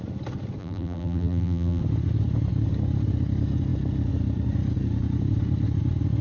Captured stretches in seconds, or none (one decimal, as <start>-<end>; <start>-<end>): 0.0-0.6; 1.8-6.2